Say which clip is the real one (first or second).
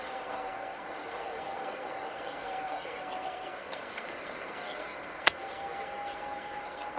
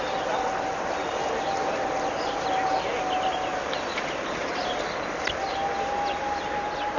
second